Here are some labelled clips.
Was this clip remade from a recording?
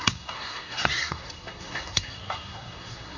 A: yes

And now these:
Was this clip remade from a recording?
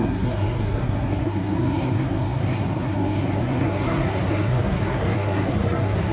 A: yes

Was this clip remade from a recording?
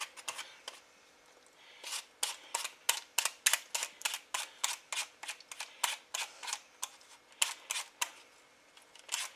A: no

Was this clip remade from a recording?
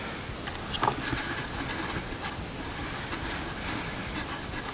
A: no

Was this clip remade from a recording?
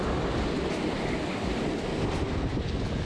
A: no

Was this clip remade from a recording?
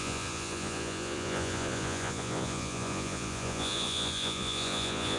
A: yes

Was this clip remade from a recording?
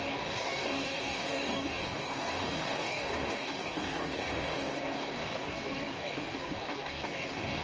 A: yes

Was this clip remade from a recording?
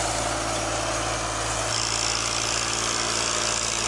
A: no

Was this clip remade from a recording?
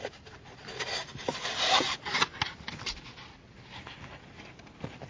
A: no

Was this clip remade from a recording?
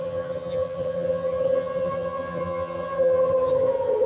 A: yes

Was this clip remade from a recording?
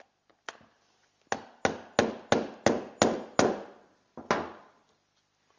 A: no